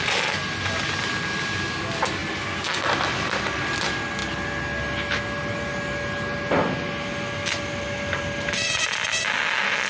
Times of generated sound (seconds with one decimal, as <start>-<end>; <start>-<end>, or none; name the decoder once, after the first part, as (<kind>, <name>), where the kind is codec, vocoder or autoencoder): none